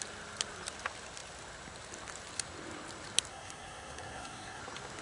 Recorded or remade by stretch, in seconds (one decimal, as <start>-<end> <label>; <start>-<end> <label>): 0.0-3.3 recorded; 3.3-4.6 remade; 4.6-5.0 recorded